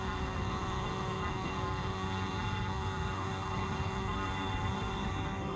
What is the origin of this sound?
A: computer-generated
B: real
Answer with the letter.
A